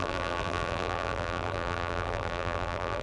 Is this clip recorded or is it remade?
remade